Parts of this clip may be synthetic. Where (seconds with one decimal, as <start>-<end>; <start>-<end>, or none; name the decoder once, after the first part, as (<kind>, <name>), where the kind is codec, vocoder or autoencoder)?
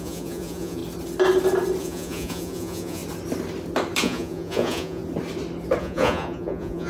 0.0-0.8 (vocoder, Vocos); 1.8-3.0; 4.0-5.0; 5.8-6.9